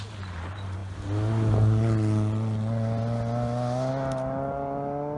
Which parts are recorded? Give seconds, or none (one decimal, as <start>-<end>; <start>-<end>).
0.0-5.2